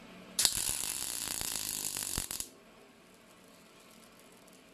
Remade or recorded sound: recorded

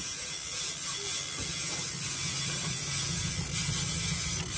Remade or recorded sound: recorded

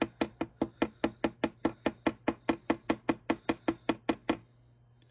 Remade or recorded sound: recorded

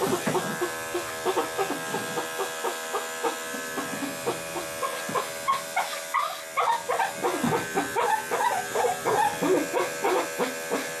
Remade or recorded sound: recorded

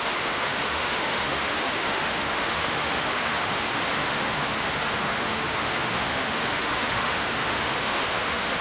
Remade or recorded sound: remade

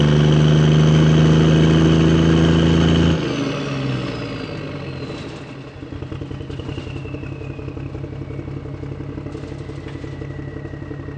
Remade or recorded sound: recorded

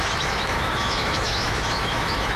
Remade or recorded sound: remade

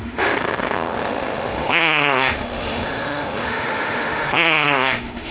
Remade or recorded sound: remade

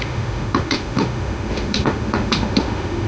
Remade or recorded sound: remade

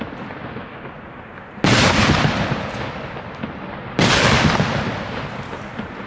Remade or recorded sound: recorded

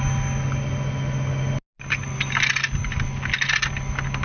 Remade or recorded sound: recorded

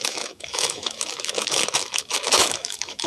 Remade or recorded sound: remade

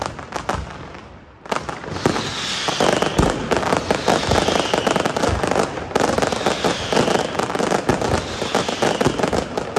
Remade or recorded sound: recorded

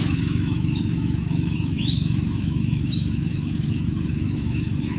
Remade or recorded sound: remade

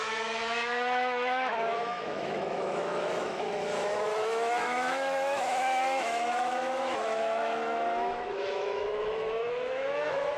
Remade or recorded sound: remade